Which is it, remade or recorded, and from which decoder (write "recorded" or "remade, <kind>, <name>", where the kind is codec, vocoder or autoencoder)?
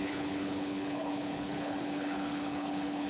remade, codec, HILCodec